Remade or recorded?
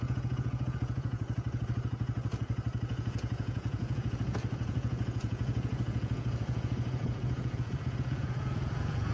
remade